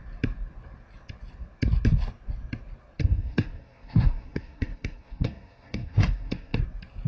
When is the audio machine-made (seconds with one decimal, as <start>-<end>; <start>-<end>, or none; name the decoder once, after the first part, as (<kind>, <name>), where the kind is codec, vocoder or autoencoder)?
3.0-6.6 (codec, SNAC)